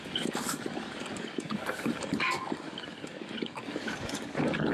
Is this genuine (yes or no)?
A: no